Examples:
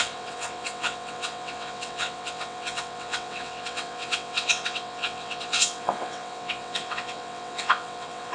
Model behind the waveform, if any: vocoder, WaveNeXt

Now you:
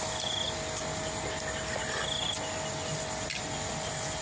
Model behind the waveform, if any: none